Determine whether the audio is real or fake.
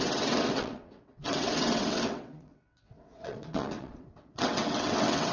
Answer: fake